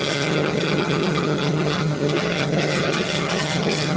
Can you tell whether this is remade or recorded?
remade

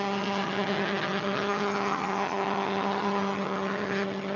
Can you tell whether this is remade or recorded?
remade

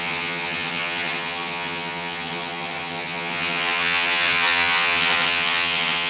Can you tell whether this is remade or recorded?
remade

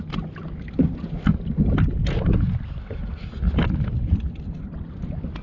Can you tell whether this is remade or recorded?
recorded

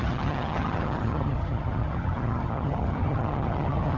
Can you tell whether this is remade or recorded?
remade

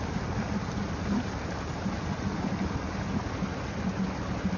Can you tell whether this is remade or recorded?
recorded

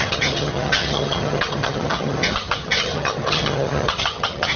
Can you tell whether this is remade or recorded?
remade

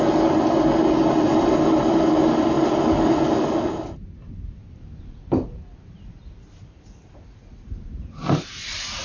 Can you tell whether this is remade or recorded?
recorded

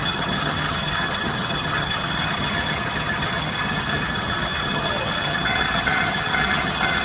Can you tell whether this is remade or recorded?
remade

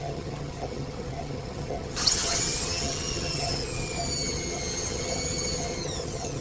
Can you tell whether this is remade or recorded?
remade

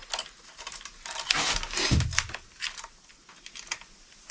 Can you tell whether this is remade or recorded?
recorded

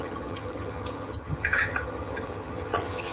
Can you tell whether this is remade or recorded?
remade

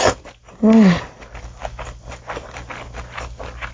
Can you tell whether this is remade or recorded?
recorded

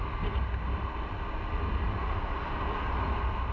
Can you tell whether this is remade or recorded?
recorded